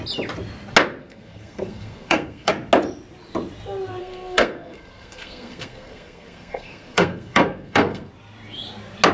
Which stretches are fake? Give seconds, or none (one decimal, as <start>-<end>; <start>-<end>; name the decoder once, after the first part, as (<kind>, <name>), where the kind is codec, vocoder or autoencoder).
1.0-2.5 (codec, SNAC); 4.0-8.1